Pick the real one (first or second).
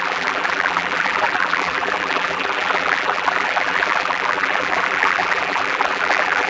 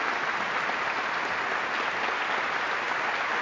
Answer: second